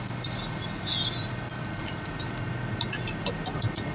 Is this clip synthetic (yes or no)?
no